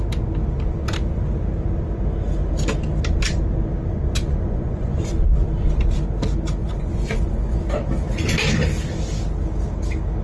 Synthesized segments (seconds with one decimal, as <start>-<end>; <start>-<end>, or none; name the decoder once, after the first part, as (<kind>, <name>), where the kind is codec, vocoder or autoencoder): 3.9-5.0 (vocoder, Vocos); 6.6-7.6